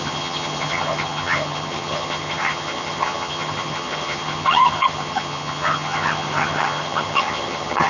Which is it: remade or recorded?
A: remade